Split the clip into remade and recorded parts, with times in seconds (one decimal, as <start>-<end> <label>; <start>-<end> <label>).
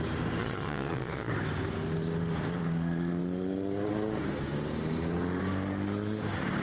0.0-0.4 recorded; 0.4-1.3 remade; 1.3-6.6 recorded